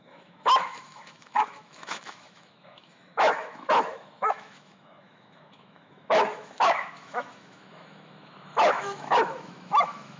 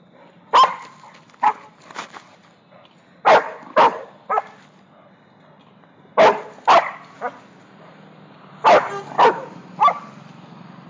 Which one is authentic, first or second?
second